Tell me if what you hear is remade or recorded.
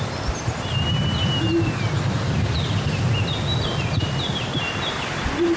recorded